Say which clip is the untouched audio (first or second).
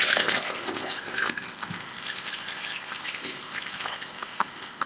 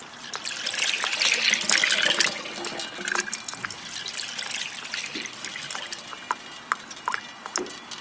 second